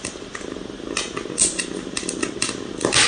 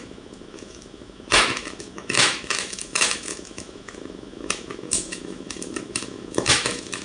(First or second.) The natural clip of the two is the first